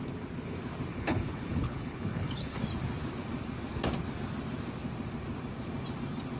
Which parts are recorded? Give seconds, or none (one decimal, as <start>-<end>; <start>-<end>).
0.0-0.9; 2.6-6.4